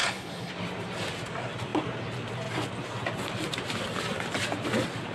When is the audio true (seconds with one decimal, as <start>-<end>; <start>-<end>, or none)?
0.5-5.1

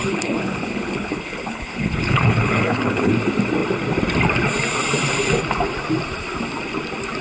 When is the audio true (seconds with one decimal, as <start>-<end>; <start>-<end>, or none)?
3.1-7.2

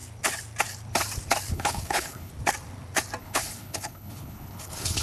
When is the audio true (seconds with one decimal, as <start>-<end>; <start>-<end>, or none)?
0.0-1.5; 2.3-3.2